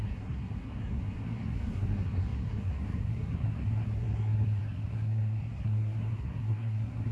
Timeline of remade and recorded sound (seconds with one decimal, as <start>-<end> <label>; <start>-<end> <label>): 0.0-7.1 remade